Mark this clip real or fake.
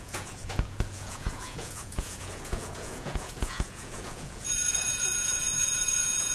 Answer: fake